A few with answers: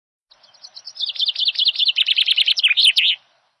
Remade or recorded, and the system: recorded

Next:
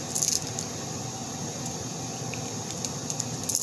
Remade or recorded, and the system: recorded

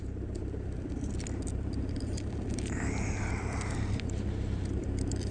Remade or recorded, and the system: remade, vocoder, BigVGAN v2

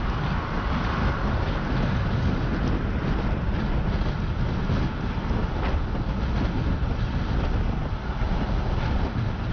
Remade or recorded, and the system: recorded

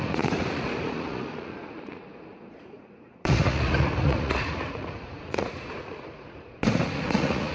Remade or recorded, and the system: remade, vocoder, Vocos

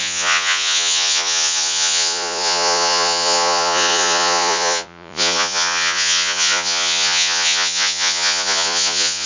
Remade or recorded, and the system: remade, vocoder, Vocos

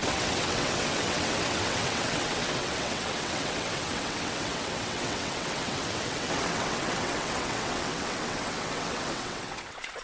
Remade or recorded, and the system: remade, vocoder, WaveNeXt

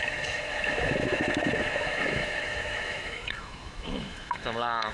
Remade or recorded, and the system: remade, autoencoder, DAC-VAE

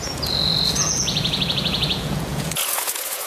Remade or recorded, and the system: remade, vocoder, Vocos